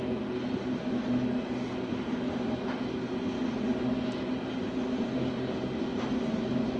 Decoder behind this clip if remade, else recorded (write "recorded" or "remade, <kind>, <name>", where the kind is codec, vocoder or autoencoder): recorded